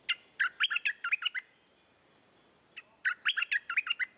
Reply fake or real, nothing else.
real